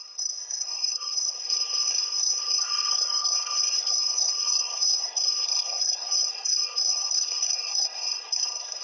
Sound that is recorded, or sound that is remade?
remade